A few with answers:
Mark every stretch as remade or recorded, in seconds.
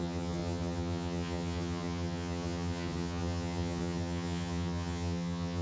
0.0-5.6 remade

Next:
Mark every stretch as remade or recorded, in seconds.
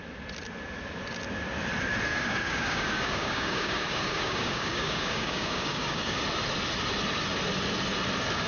0.0-2.1 recorded; 2.1-6.2 remade; 6.2-8.5 recorded